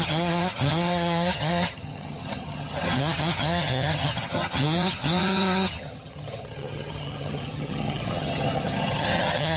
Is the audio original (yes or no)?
no